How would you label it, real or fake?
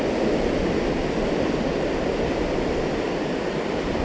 real